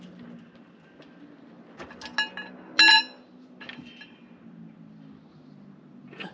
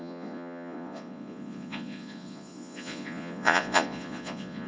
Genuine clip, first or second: first